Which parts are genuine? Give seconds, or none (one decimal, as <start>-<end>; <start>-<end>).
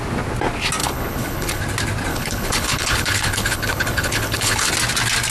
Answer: 0.0-0.8; 1.6-2.1; 4.7-5.3